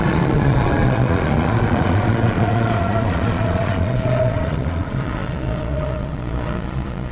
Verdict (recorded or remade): remade